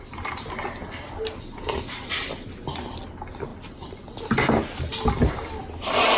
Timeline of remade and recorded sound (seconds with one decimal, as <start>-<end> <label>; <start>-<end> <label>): 0.0-6.2 recorded